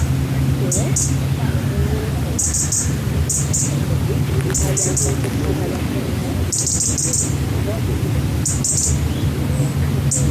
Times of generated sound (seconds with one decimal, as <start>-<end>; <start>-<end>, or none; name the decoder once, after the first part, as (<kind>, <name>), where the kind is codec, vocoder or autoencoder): 1.8-4.7 (vocoder, BigVGAN v2); 6.2-8.6

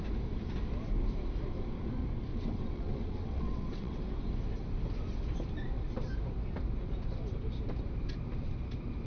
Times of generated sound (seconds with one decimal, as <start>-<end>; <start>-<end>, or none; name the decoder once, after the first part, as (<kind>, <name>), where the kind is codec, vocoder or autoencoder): 2.3-4.0 (vocoder, WaveNeXt)

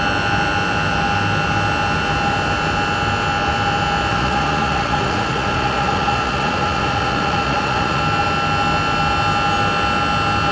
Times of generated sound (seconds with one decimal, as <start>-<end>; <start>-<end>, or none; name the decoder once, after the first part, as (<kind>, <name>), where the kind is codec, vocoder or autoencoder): 4.1-8.0 (vocoder, Vocos)

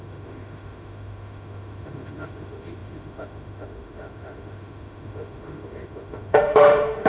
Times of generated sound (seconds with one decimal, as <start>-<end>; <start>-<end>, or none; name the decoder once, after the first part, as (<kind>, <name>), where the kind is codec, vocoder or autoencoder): 0.0-7.1 (autoencoder, DAC-VAE)

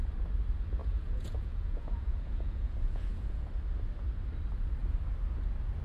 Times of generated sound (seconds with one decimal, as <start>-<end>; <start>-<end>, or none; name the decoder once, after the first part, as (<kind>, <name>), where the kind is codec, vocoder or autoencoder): 0.8-3.5 (vocoder, Vocos)

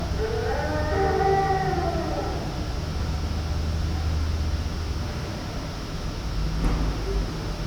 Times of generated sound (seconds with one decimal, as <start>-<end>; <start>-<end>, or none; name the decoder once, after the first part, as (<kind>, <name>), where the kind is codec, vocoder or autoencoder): none